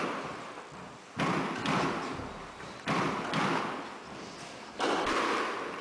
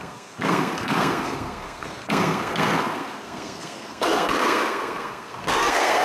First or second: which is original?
first